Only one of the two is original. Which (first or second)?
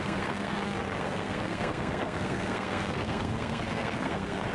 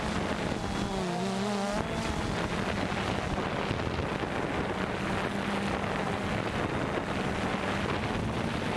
second